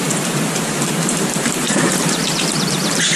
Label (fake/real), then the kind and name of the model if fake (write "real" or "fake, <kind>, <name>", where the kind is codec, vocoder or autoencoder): fake, vocoder, BigVGAN v2